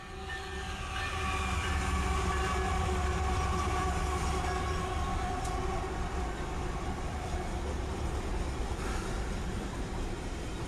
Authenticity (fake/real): real